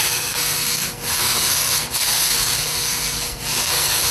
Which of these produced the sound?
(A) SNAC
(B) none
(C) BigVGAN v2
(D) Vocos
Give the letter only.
A